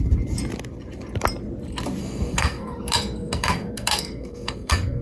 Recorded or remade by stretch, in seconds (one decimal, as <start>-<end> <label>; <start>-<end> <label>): 0.0-2.0 recorded; 2.0-5.0 remade